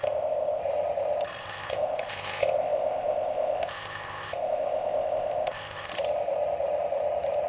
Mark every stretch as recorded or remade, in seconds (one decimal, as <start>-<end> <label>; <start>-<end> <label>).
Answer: 0.0-0.6 remade; 0.6-1.4 recorded; 1.4-5.9 remade; 5.9-7.5 recorded